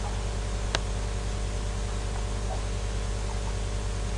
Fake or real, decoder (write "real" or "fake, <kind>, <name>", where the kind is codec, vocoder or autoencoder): real